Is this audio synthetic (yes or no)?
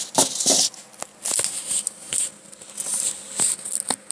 no